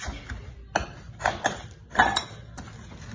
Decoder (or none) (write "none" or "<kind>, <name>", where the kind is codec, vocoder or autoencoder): none